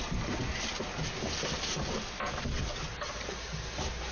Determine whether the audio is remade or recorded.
recorded